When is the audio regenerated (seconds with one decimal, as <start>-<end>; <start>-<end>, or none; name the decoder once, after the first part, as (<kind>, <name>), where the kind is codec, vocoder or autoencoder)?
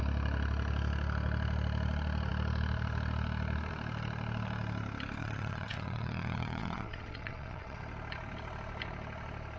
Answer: 5.2-7.8 (vocoder, WaveNeXt)